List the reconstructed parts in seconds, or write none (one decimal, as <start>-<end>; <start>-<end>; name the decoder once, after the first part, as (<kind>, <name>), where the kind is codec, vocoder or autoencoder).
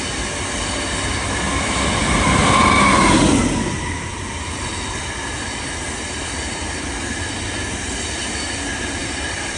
2.0-3.4 (vocoder, BigVGAN v2); 4.1-4.9; 9.0-9.6